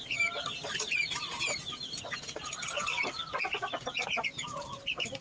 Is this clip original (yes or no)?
yes